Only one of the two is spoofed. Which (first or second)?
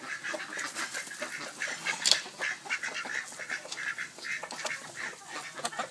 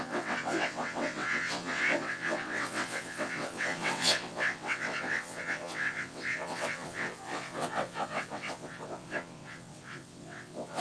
second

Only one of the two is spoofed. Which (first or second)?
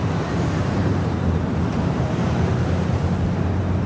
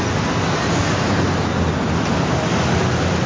first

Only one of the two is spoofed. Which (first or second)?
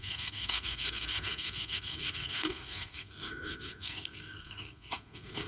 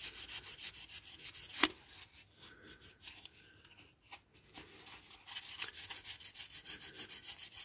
first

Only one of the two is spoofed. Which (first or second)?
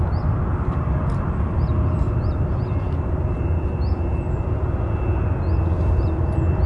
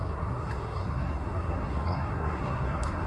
second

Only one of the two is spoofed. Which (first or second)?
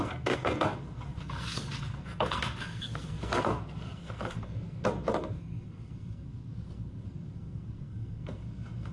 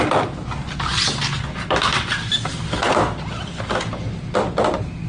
first